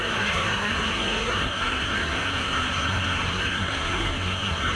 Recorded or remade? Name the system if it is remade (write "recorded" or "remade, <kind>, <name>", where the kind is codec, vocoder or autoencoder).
remade, codec, SNAC